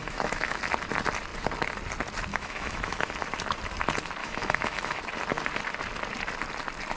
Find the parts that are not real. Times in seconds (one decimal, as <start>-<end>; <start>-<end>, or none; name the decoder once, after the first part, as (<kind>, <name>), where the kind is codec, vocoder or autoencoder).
0.0-0.6 (autoencoder, DAC-VAE); 2.3-3.1; 4.2-5.0